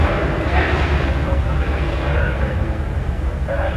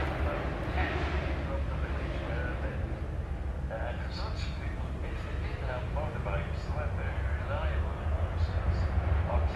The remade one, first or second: first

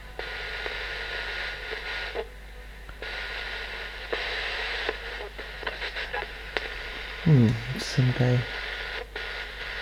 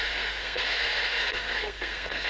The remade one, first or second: second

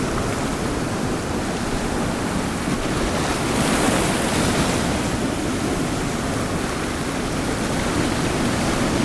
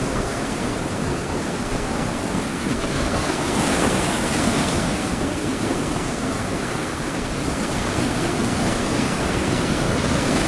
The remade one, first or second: second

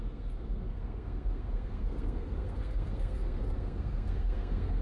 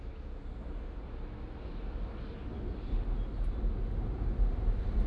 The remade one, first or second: first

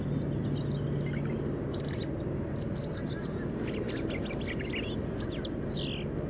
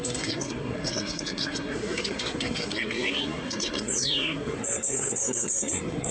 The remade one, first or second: second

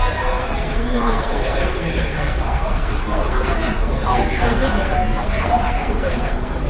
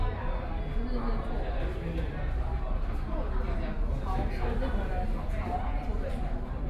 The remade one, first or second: first